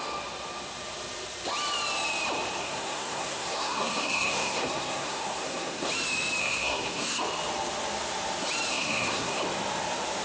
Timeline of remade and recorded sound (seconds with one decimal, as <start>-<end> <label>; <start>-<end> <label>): 0.0-2.6 recorded; 2.6-5.9 remade; 5.9-6.4 recorded; 6.4-7.2 remade; 7.2-8.7 recorded; 8.7-9.4 remade; 9.4-10.2 recorded